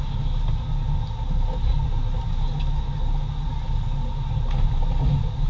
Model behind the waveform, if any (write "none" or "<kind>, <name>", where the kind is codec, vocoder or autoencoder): none